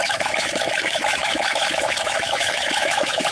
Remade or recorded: remade